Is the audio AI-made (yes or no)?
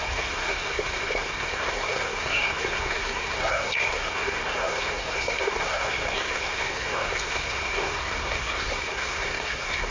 yes